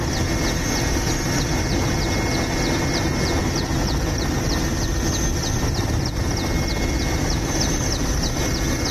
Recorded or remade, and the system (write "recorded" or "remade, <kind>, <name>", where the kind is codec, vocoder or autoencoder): recorded